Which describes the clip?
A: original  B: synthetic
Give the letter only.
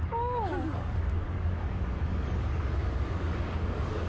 B